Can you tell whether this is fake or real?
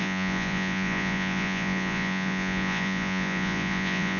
fake